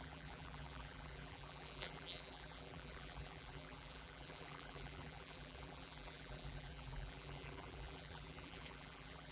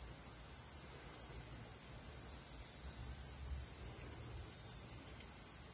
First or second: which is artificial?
first